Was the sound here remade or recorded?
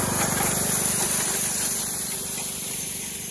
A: recorded